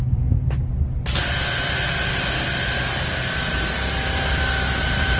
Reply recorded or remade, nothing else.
recorded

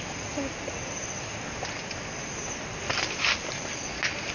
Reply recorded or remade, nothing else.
recorded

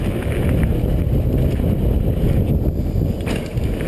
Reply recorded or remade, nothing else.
recorded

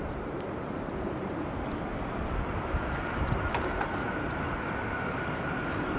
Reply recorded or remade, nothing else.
remade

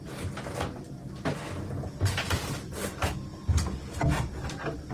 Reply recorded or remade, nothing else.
recorded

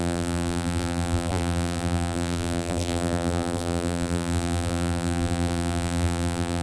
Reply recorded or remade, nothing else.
remade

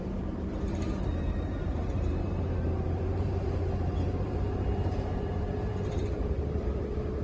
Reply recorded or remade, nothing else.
remade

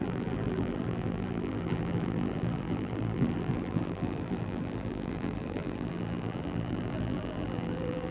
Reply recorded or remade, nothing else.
remade